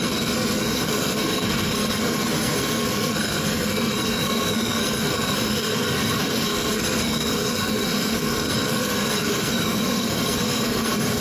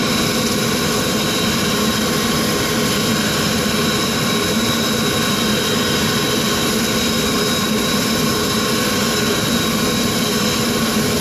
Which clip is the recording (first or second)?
second